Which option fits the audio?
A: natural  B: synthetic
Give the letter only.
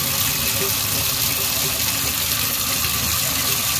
A